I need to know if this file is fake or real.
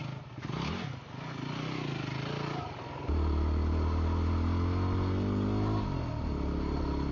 real